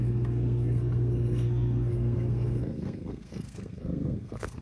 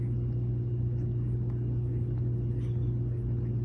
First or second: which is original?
second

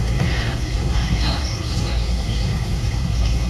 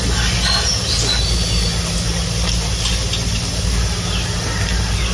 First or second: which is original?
second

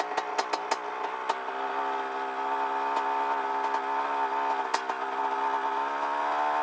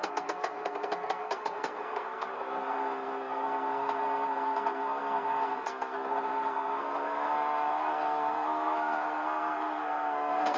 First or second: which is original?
first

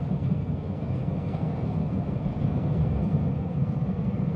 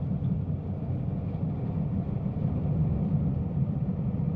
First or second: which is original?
second